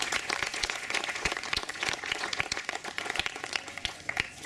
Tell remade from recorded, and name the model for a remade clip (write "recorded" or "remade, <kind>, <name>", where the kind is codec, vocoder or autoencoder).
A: remade, vocoder, Vocos